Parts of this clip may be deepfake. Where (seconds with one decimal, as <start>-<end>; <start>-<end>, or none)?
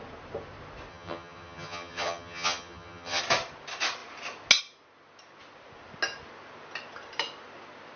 0.9-3.2